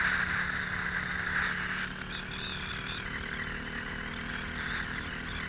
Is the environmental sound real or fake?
real